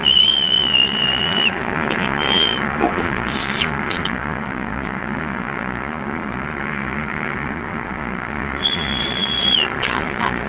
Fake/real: fake